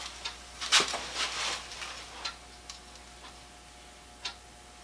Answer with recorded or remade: recorded